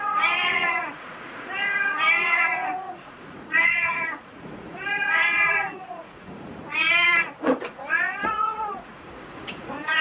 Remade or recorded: remade